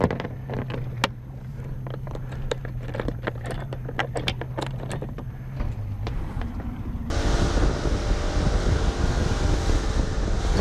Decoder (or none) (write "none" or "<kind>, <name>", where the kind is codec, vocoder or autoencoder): none